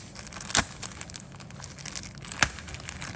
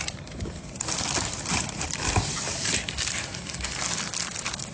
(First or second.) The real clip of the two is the first